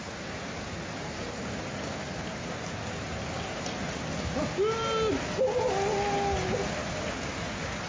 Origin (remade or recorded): recorded